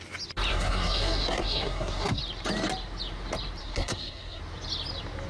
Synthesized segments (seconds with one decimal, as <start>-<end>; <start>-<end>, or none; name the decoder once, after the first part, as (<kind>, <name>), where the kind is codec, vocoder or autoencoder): 0.5-2.2 (codec, SNAC); 3.6-4.4